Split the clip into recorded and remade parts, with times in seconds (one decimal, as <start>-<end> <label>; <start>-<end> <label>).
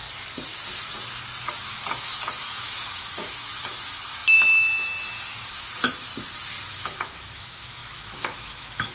0.0-1.9 recorded; 1.9-6.1 remade; 6.1-6.7 recorded; 6.7-8.9 remade